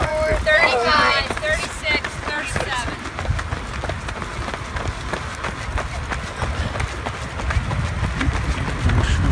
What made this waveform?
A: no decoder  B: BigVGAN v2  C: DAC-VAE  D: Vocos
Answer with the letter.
A